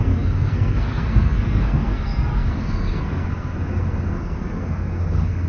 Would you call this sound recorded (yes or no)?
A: no